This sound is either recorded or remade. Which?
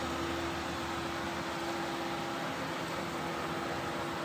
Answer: recorded